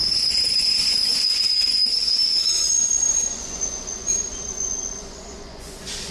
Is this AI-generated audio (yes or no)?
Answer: yes